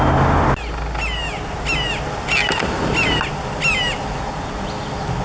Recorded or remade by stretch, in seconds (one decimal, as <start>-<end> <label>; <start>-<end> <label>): 0.0-5.2 recorded